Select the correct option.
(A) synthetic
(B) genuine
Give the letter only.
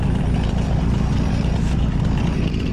B